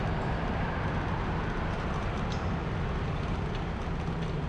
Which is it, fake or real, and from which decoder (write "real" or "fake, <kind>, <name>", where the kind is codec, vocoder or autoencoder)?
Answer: real